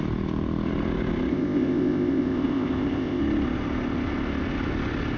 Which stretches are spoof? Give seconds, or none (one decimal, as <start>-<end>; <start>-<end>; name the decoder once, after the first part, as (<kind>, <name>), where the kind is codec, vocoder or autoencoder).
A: 1.3-3.2 (codec, ZipCodec)